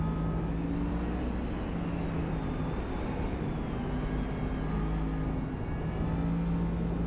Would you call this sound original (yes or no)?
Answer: yes